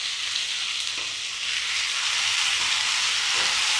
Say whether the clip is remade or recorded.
recorded